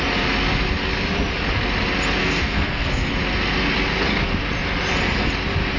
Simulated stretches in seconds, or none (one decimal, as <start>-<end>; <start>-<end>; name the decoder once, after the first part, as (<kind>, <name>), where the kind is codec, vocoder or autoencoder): 2.2-3.1 (codec, SNAC)